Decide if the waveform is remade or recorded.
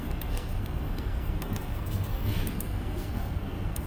remade